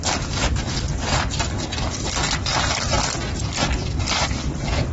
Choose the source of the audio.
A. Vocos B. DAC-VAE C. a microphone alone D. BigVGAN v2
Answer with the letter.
C